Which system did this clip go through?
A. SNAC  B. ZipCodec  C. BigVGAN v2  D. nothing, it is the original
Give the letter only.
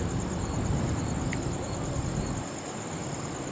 D